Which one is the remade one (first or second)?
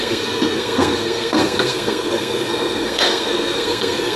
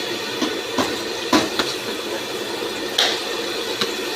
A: first